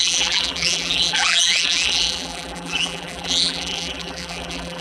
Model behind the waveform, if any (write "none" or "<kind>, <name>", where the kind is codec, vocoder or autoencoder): vocoder, BigVGAN v2